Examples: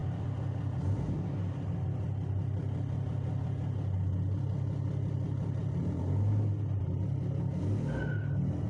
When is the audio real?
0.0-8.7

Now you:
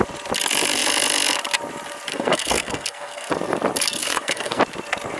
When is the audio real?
0.0-2.1; 3.3-4.0; 4.6-5.2

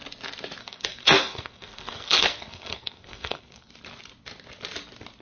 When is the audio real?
0.0-0.6; 3.7-5.2

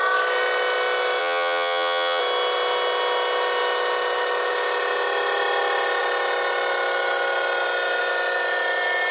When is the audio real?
0.0-1.2; 2.2-9.1

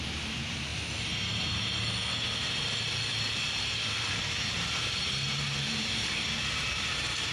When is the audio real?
0.7-4.4

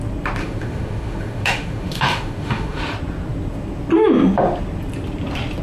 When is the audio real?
0.0-0.4; 2.8-5.6